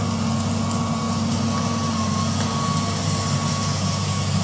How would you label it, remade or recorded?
recorded